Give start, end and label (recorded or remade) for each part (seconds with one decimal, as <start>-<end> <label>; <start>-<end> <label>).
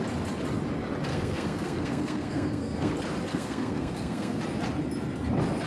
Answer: 0.0-1.1 recorded; 1.1-2.9 remade; 2.9-3.3 recorded; 3.3-4.4 remade; 4.4-5.7 recorded